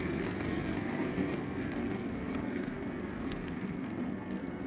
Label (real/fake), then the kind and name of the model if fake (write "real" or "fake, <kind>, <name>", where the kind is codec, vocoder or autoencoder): fake, codec, SNAC